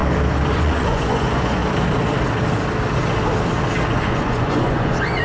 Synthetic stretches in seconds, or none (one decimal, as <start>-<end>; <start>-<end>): 0.5-1.6; 3.9-5.2